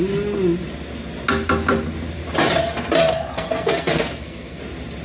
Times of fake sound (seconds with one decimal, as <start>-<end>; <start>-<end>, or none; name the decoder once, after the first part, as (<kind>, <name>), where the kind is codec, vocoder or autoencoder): 3.0-4.6 (codec, SNAC)